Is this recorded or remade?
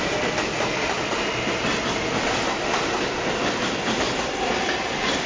recorded